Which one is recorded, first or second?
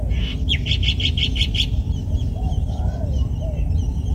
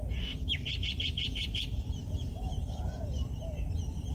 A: first